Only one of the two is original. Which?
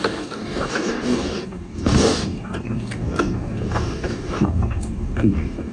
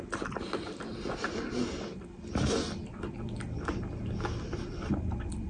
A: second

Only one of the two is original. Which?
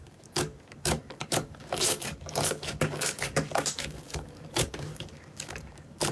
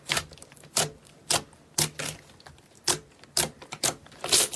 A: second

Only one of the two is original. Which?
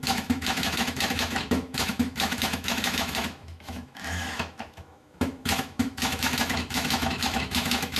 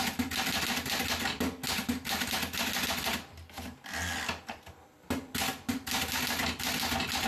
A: second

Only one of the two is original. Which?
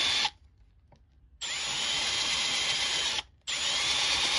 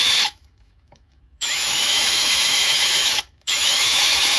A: first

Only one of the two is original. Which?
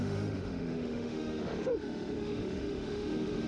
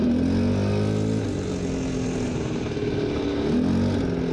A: second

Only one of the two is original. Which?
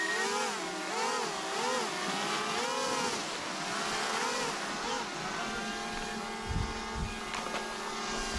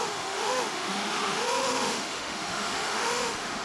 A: first